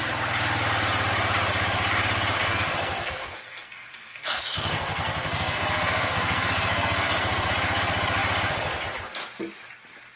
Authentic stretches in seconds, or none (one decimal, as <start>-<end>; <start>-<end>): 0.0-2.4; 7.5-10.2